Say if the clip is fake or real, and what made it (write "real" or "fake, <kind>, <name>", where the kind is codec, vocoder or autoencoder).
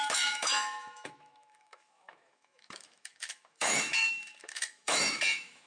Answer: fake, autoencoder, DAC-VAE